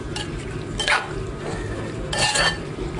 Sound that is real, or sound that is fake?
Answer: real